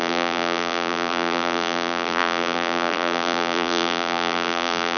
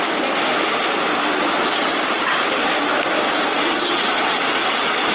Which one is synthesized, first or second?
first